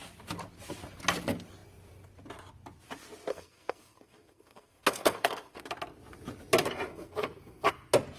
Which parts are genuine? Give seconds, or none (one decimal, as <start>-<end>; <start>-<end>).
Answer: 0.0-3.3; 5.6-6.9; 7.7-8.2